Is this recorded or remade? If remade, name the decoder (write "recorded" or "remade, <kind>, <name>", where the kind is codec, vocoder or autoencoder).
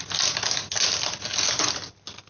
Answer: recorded